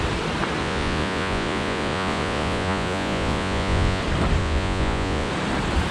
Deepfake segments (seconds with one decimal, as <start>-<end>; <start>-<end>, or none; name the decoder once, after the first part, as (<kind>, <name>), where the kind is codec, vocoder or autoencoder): 0.6-4.0 (vocoder, Vocos); 4.4-5.3